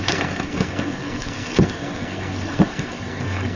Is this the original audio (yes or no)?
no